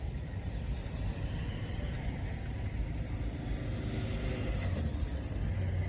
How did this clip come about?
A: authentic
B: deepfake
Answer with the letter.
A